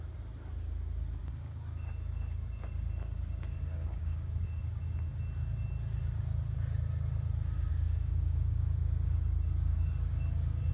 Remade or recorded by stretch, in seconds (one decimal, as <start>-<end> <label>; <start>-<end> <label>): 0.0-1.2 recorded; 1.2-4.8 remade; 4.8-7.7 recorded; 7.7-10.7 remade